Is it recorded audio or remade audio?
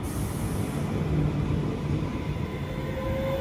recorded